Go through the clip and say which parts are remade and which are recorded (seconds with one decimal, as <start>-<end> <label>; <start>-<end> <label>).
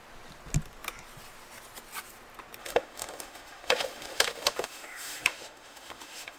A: 0.0-2.6 recorded; 2.6-6.4 remade